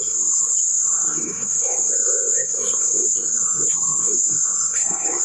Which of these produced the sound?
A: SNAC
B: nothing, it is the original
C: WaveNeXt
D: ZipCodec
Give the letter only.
A